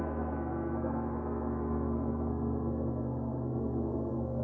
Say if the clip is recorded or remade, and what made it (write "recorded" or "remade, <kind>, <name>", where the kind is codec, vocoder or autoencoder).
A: remade, codec, SNAC